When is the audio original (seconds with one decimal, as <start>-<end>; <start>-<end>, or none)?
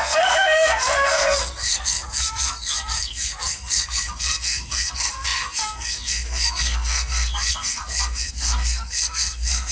none